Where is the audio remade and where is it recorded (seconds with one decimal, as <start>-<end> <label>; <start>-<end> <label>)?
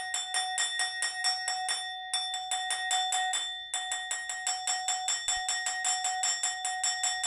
0.0-7.3 recorded